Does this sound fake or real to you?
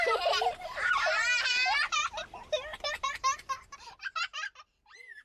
fake